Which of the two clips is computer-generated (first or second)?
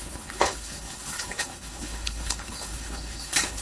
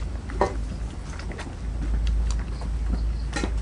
first